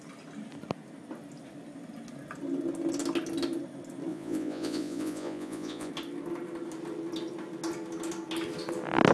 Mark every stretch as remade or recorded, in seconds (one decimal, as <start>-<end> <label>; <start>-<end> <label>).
0.0-4.1 recorded; 4.1-5.9 remade; 5.9-9.1 recorded